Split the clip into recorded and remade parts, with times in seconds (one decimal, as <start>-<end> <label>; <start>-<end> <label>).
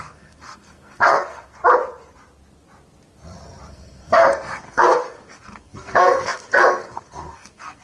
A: 0.0-1.6 remade; 1.6-3.7 recorded; 3.7-7.8 remade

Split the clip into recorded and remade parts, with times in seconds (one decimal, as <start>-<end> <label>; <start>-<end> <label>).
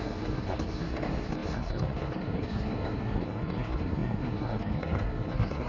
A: 0.0-5.7 remade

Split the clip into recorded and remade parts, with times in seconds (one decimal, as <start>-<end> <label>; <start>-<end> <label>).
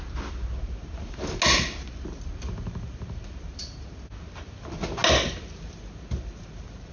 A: 0.0-6.9 recorded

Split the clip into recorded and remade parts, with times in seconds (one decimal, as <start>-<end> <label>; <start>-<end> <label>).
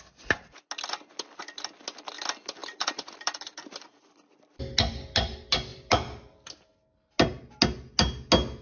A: 0.0-2.6 recorded; 2.6-4.0 remade; 4.0-5.7 recorded; 5.7-6.7 remade; 6.7-8.6 recorded